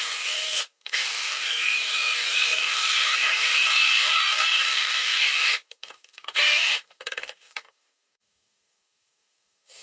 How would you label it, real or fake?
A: fake